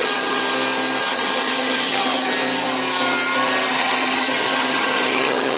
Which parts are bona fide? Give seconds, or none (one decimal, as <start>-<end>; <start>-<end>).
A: 0.4-1.0; 2.3-3.7